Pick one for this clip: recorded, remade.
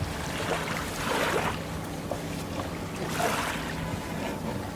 recorded